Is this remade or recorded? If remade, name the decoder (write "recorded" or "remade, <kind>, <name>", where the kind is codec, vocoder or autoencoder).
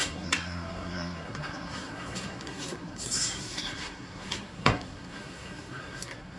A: remade, codec, SNAC